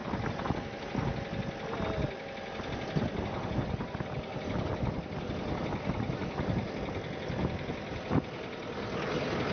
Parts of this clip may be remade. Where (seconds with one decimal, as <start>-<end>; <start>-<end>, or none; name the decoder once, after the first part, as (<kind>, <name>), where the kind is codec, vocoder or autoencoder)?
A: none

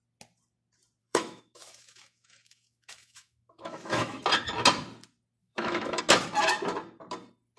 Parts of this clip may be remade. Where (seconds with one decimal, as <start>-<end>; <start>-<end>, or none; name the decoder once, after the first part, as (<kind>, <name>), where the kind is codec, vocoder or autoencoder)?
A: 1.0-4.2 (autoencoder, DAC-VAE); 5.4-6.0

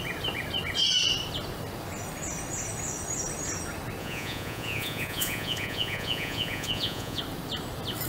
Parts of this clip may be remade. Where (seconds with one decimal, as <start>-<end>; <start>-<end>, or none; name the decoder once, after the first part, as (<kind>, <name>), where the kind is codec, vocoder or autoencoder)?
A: 4.0-7.2 (vocoder, Vocos)

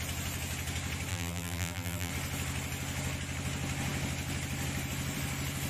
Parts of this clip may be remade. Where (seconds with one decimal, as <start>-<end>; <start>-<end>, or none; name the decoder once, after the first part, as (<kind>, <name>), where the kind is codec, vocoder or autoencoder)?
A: 1.1-2.1 (vocoder, BigVGAN v2)

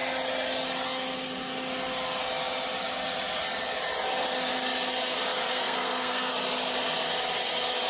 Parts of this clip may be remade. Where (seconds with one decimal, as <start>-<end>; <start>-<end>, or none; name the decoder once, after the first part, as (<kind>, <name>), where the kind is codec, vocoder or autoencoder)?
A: 5.5-6.3 (codec, SNAC)

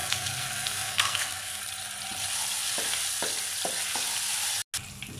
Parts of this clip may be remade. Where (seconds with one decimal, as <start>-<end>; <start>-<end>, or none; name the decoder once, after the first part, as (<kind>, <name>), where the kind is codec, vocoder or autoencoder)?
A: 0.0-1.6 (codec, SNAC)

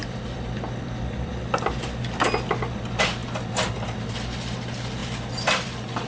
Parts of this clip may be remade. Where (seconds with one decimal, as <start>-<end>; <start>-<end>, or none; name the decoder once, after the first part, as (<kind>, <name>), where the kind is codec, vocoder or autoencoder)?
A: 0.0-1.3 (vocoder, BigVGAN v2); 5.0-6.1

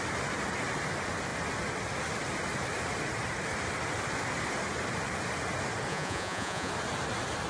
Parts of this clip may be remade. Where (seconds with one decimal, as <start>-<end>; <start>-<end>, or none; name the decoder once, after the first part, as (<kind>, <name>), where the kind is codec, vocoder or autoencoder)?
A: 5.9-6.7 (vocoder, Vocos)